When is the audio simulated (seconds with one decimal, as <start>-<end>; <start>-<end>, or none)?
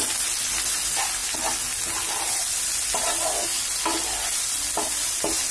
none